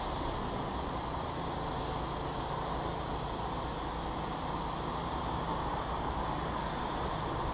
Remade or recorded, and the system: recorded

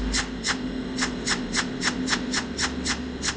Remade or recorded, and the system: recorded